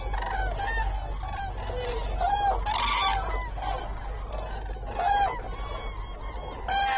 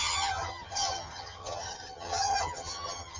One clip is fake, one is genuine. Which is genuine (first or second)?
first